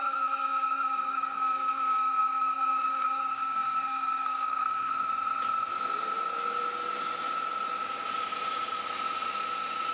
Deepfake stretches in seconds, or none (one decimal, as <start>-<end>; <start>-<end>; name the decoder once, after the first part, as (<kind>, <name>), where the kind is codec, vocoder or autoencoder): 0.0-4.9 (codec, SNAC)